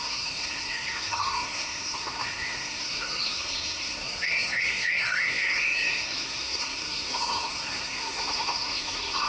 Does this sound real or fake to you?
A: fake